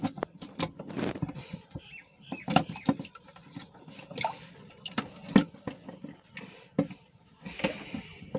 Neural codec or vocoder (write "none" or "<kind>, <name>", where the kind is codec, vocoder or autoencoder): none